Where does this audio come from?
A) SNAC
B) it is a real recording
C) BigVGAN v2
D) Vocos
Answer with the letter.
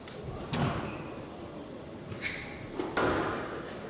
B